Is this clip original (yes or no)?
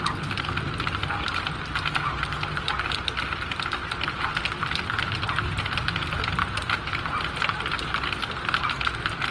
yes